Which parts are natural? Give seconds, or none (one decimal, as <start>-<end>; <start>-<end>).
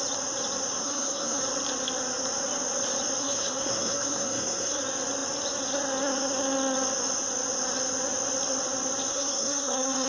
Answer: 0.0-0.8; 1.4-3.2; 4.8-9.1